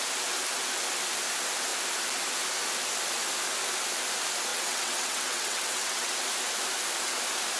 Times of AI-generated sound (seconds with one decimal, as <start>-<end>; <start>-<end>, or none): 4.5-6.1